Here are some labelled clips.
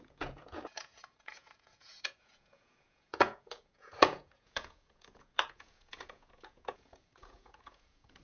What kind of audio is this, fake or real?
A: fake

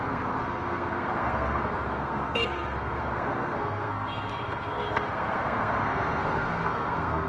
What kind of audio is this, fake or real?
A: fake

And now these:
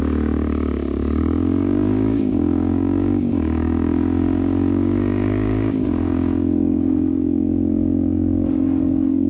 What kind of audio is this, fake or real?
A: fake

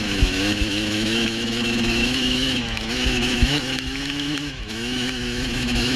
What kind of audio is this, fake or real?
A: fake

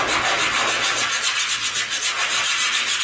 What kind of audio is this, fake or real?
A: real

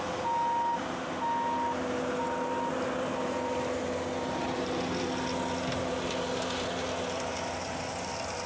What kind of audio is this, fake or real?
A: real